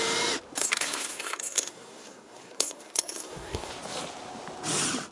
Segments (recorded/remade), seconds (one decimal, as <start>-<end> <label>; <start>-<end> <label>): 0.0-0.6 recorded; 0.6-3.7 remade; 3.7-5.1 recorded